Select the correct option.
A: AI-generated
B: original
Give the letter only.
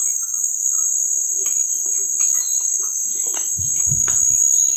A